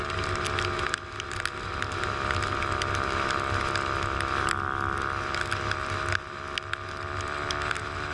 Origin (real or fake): real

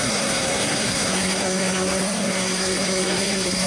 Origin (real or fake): fake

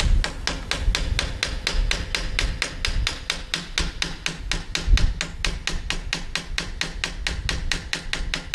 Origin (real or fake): real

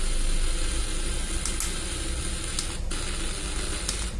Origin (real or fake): real